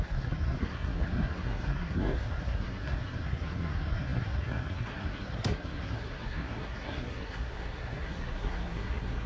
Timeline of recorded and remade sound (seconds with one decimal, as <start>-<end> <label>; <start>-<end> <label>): 0.0-9.3 remade

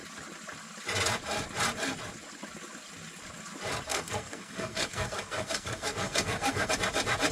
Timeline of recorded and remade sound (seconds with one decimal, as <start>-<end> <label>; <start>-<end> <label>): 0.0-3.9 recorded; 3.9-6.7 remade; 6.7-7.3 recorded

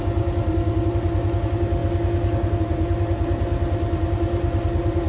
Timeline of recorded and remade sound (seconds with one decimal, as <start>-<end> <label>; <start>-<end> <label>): 0.0-5.1 recorded

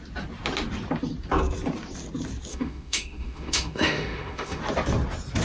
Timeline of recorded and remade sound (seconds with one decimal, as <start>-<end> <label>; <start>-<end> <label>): 0.0-2.5 recorded; 2.5-4.6 remade; 4.6-5.4 recorded